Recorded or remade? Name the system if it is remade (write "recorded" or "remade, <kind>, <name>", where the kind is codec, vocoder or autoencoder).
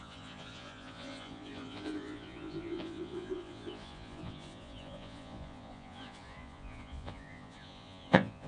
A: remade, vocoder, Vocos